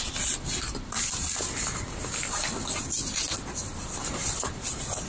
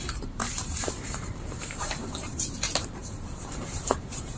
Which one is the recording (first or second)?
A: first